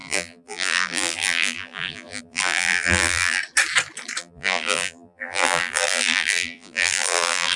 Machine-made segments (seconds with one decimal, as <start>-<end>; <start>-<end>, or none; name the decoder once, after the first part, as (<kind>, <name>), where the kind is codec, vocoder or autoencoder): 0.0-3.4 (vocoder, BigVGAN v2); 4.2-7.6